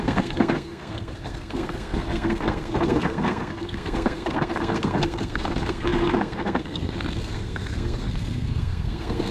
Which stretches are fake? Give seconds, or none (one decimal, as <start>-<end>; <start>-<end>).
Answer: 0.0-9.3